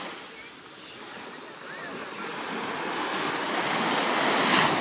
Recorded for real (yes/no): yes